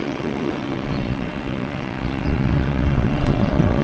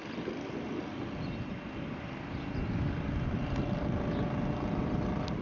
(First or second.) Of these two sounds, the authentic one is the second